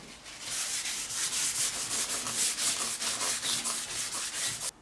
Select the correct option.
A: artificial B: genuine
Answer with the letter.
B